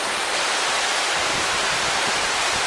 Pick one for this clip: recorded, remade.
remade